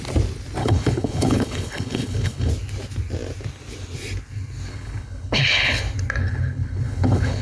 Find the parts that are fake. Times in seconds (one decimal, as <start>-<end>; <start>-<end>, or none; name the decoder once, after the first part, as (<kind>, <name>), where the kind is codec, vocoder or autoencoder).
0.6-2.5 (codec, HILCodec); 4.7-5.8; 6.2-7.4